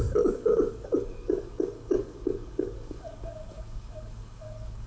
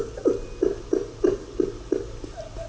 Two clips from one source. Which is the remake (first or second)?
first